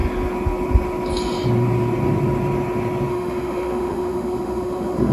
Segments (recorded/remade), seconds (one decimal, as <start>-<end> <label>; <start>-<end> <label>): 0.0-3.1 recorded; 3.1-5.1 remade